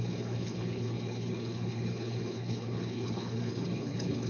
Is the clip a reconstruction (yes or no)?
yes